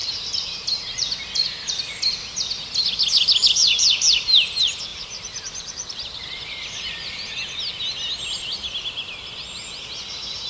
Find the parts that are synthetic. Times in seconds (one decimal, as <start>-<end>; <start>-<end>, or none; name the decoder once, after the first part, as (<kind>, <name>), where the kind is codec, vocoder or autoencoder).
0.0-1.7 (vocoder, BigVGAN v2); 4.9-6.2